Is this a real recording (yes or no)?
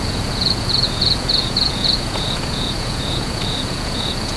no